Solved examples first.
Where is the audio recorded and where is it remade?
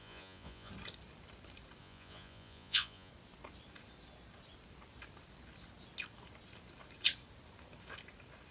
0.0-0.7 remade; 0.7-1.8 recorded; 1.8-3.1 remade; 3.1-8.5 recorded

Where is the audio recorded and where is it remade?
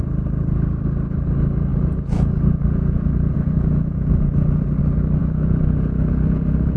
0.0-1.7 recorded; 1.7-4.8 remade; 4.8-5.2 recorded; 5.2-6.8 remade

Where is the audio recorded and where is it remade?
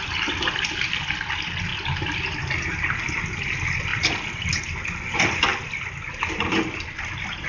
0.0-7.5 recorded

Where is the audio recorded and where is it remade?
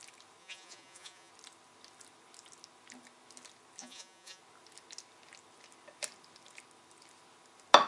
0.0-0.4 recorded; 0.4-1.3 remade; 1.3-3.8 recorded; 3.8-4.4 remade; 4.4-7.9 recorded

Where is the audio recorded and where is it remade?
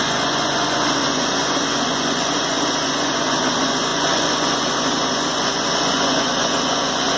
0.0-7.2 remade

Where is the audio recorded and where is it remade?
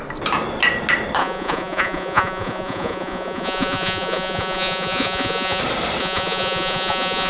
0.0-1.2 recorded; 1.2-5.6 remade; 5.6-6.0 recorded; 6.0-7.3 remade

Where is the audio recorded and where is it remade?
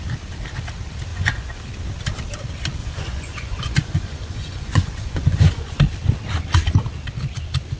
0.0-1.1 recorded; 1.1-1.6 remade; 1.6-2.8 recorded; 2.8-5.8 remade; 5.8-7.8 recorded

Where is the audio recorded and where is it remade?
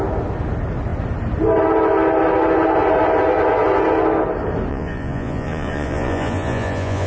0.0-4.7 recorded; 4.7-7.1 remade